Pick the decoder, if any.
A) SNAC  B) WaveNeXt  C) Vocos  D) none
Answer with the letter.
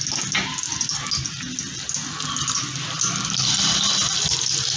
D